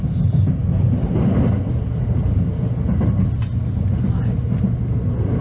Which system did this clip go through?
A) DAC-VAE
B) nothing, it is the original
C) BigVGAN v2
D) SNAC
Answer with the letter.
B